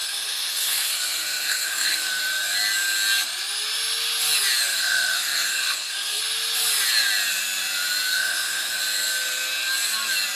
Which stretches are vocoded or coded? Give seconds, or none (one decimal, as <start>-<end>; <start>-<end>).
0.0-2.2; 4.7-6.2; 8.1-8.8